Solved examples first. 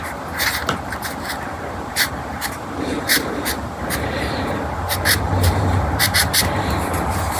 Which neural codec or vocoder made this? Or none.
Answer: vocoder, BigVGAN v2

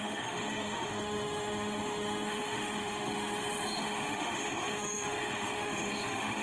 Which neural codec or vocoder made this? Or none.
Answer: autoencoder, DAC-VAE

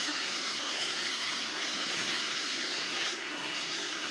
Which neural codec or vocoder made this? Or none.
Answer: codec, SNAC